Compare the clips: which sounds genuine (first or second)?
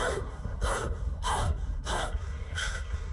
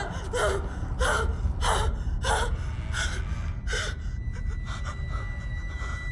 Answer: second